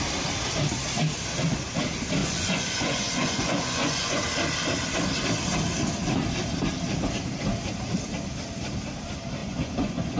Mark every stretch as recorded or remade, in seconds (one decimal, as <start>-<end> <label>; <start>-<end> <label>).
0.0-2.2 recorded; 2.2-4.2 remade; 4.2-9.4 recorded; 9.4-10.2 remade